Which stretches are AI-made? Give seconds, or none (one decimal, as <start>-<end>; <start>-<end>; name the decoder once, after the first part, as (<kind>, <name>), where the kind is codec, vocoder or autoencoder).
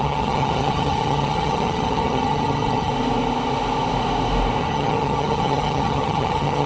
0.0-2.9 (vocoder, HiFi-GAN); 4.6-6.7